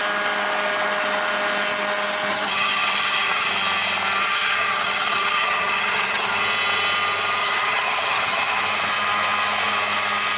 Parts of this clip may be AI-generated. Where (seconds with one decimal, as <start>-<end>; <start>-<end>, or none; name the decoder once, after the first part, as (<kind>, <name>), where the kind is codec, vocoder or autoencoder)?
2.3-3.5 (vocoder, HiFi-GAN); 4.2-6.3; 7.4-8.6